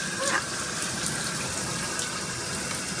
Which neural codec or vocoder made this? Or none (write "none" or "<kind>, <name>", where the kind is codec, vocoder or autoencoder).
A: none